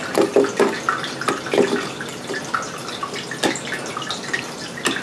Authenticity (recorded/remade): recorded